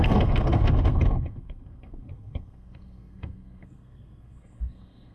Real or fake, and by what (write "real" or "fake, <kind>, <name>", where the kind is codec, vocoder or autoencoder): fake, codec, SNAC